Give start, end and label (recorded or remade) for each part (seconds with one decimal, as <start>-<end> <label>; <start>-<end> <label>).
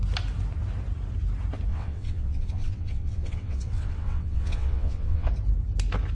0.0-1.7 recorded; 1.7-5.3 remade; 5.3-6.1 recorded